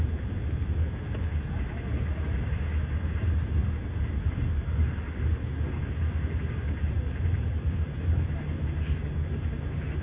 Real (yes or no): yes